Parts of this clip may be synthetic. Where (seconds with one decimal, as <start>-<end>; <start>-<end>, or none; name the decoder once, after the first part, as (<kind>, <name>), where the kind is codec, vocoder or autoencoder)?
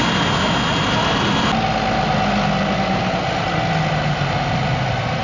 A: none